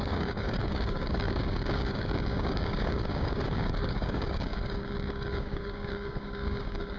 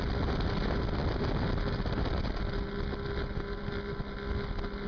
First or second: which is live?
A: second